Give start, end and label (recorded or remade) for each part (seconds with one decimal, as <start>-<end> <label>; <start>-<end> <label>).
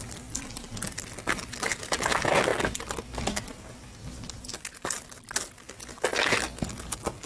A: 0.0-7.3 recorded